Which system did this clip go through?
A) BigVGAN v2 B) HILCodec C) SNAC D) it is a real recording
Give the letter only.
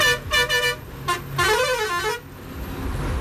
D